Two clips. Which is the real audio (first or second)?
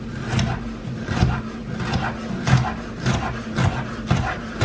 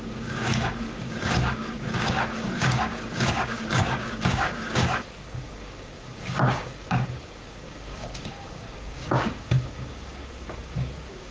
first